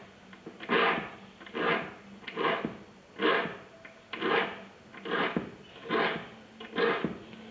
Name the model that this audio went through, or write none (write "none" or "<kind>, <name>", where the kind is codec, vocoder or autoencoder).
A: none